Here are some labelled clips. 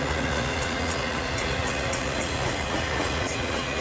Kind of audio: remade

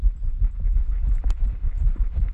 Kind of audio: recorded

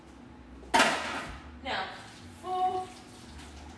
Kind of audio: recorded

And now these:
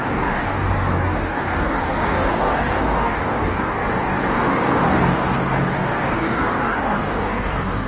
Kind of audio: remade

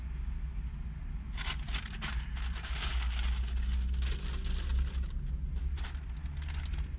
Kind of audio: recorded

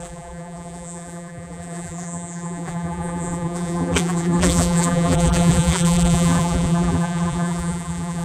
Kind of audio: remade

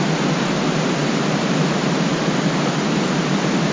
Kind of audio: recorded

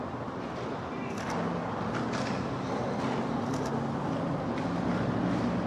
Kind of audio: recorded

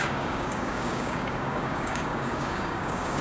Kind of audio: remade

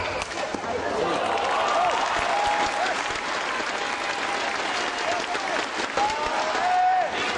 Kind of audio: recorded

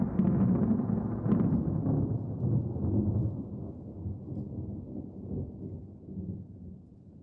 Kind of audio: recorded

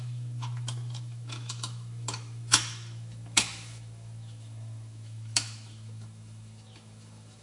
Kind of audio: remade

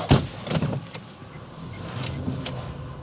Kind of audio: remade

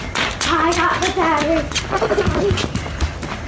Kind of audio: recorded